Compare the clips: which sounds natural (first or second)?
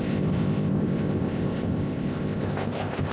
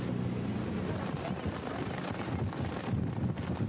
second